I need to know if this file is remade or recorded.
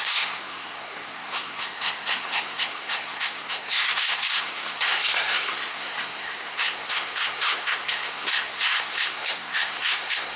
remade